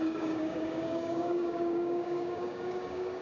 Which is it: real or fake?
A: fake